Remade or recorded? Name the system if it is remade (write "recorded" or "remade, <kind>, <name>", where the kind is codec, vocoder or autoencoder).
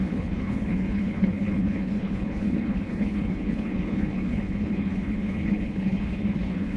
remade, codec, HILCodec